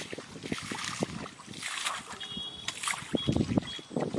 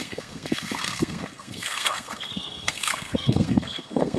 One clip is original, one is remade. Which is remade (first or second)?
second